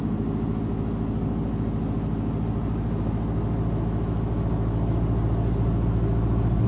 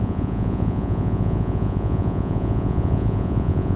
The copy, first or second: second